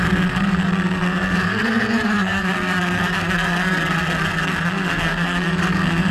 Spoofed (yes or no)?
yes